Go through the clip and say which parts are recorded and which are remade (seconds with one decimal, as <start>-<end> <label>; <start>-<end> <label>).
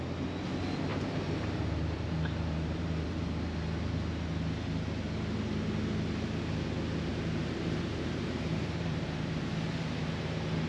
0.0-0.9 recorded; 0.9-3.3 remade; 3.3-7.1 recorded; 7.1-9.5 remade; 9.5-10.7 recorded